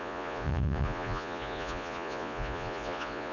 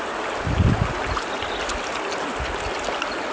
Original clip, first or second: second